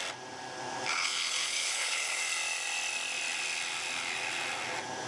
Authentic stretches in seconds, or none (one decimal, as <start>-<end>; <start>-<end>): 0.0-0.9; 2.2-5.1